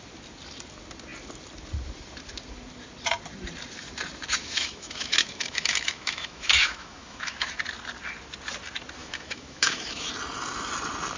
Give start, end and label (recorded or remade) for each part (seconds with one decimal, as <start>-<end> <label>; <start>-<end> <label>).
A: 0.0-4.4 recorded; 4.4-7.5 remade; 7.5-9.0 recorded; 9.0-10.1 remade; 10.1-11.2 recorded